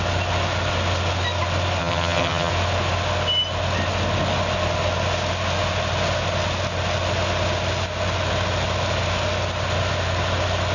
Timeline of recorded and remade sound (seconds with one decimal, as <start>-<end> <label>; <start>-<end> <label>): 0.0-1.8 recorded; 1.8-2.5 remade; 2.5-10.7 recorded